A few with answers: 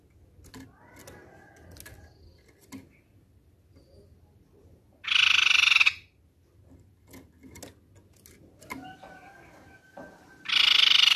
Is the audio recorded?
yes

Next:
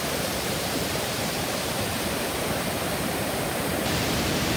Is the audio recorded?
no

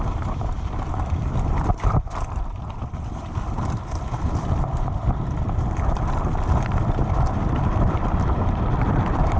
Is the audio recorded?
no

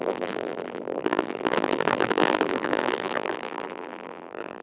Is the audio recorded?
no